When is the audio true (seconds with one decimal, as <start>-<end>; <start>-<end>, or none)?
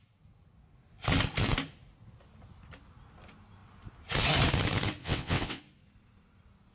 0.0-5.0; 5.6-6.7